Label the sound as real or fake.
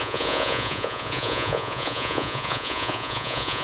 fake